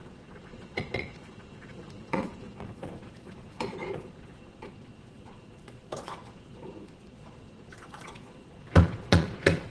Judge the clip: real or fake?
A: fake